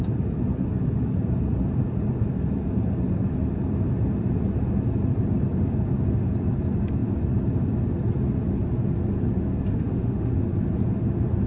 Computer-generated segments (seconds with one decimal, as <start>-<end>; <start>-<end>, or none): 9.7-10.3